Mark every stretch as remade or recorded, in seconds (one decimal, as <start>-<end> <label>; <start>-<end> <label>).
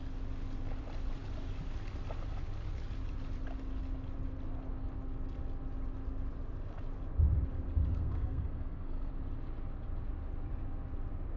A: 0.0-7.9 recorded; 7.9-9.1 remade; 9.1-11.4 recorded